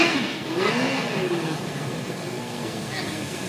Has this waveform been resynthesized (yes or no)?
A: yes